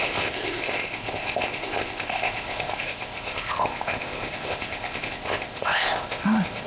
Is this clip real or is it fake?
fake